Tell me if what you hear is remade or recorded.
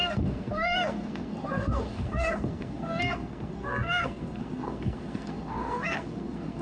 remade